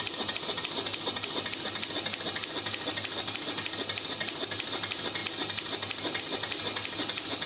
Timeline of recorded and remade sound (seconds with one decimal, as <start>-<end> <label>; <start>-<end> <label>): 0.0-7.5 recorded